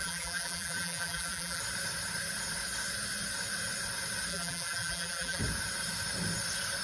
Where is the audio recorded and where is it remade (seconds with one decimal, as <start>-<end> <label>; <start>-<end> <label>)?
0.0-1.6 remade; 1.6-4.3 recorded; 4.3-5.4 remade; 5.4-6.8 recorded